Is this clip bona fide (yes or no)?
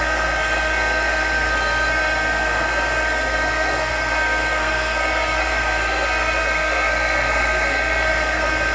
no